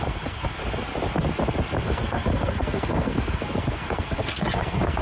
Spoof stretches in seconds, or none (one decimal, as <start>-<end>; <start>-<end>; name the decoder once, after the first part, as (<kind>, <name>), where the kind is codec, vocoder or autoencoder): 0.0-0.6 (codec, SNAC); 1.8-5.0